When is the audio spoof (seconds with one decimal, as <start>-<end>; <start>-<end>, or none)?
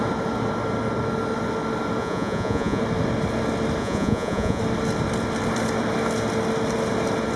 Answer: 2.0-2.8; 3.8-4.6